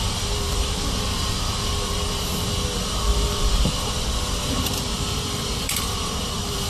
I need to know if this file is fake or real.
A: fake